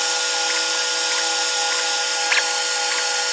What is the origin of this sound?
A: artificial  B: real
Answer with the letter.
B